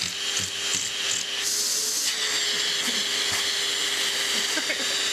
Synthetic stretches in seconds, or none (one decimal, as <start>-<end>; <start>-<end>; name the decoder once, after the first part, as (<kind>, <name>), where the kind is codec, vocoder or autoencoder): none